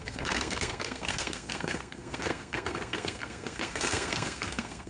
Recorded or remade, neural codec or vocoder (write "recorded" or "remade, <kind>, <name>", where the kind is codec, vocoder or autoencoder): remade, codec, SNAC